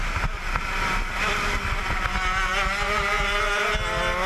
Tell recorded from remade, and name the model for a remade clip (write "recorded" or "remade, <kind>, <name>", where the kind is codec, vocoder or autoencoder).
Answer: recorded